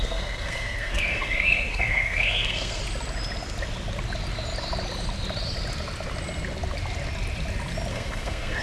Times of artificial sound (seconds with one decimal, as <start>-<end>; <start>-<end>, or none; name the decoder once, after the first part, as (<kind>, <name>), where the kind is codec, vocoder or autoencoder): 0.0-2.8 (codec, SNAC); 7.9-8.6